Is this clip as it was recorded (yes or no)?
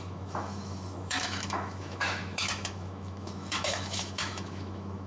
no